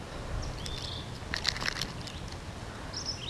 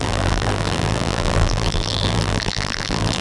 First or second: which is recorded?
first